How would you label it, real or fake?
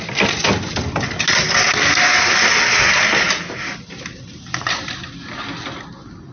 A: real